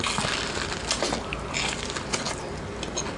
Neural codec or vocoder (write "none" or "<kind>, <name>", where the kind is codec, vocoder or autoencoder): none